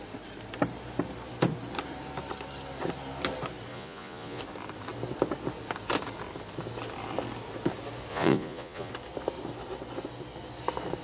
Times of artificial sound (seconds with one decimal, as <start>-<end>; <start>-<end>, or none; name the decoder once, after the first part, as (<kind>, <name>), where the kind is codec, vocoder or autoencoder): 3.7-4.4 (vocoder, Vocos); 8.1-8.9